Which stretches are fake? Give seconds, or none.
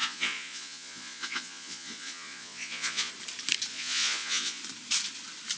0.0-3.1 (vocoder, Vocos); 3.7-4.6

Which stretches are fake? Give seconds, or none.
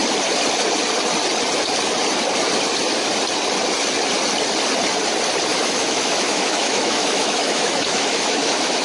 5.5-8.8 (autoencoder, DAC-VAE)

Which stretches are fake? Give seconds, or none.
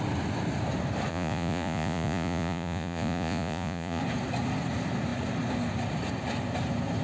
1.1-4.0 (vocoder, Vocos)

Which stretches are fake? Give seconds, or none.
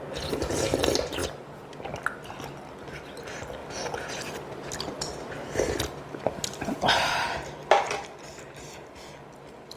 none